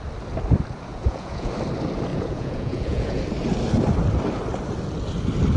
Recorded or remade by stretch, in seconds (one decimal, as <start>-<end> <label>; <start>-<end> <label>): 0.0-0.9 recorded; 0.9-1.5 remade; 1.5-2.1 recorded; 2.1-3.2 remade; 3.2-5.6 recorded